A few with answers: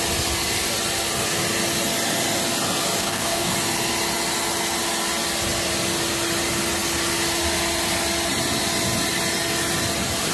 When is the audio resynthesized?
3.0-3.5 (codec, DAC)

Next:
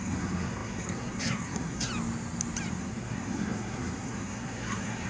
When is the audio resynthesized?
0.0-1.9 (codec, SNAC); 2.7-5.1

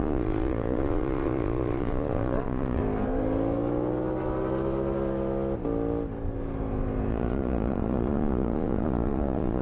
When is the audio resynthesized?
0.0-2.8 (vocoder, Vocos); 7.1-9.6